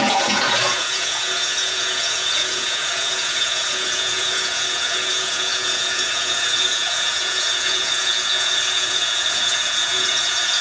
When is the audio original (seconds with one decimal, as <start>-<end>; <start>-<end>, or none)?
none